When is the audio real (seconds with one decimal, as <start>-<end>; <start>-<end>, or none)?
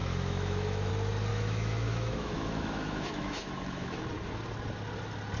0.9-1.3; 4.0-5.4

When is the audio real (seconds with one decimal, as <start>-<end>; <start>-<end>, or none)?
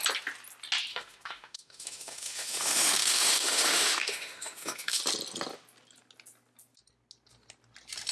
0.0-0.9; 5.0-8.1